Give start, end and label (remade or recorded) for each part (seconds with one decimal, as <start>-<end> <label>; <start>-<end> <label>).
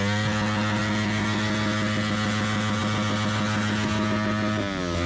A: 0.0-5.1 recorded